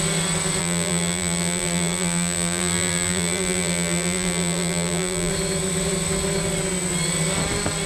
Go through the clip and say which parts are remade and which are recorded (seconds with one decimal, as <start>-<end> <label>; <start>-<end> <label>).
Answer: 0.0-0.6 recorded; 0.6-5.3 remade; 5.3-7.9 recorded